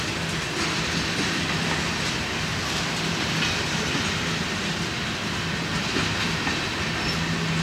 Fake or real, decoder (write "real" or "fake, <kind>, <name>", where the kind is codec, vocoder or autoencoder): real